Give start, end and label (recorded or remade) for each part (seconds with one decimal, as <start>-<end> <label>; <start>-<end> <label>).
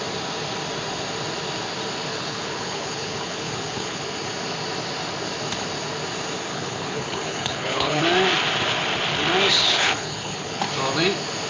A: 0.0-2.1 recorded; 2.1-4.0 remade; 4.0-6.5 recorded; 6.5-8.0 remade; 8.0-9.5 recorded; 9.5-10.6 remade; 10.6-11.5 recorded